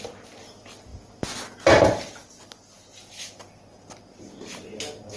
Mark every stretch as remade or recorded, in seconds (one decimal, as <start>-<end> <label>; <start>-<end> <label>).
0.0-5.2 recorded